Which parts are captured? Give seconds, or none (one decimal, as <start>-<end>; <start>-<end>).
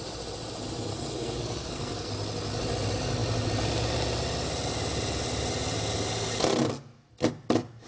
0.0-0.9; 2.1-7.9